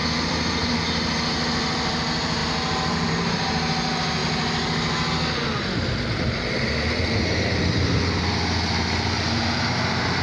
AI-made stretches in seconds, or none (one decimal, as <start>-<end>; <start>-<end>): none